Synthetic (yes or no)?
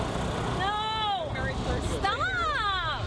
no